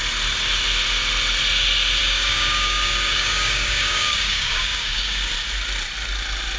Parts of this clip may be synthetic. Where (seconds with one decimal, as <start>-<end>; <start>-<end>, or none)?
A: 2.0-5.3